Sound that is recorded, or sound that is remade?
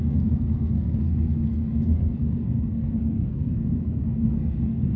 remade